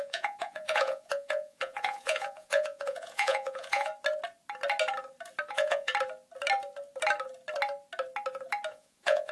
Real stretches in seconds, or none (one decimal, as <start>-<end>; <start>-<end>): 3.9-5.5; 5.9-8.7